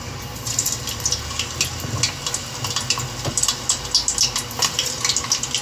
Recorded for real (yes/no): yes